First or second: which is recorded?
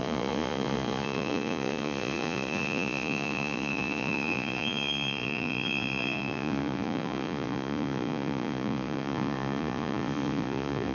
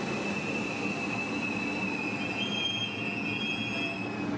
second